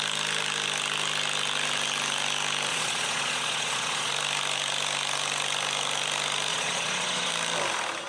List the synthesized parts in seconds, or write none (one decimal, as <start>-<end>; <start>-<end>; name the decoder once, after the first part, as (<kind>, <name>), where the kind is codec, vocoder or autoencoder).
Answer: 2.7-4.1 (vocoder, Vocos); 6.5-7.3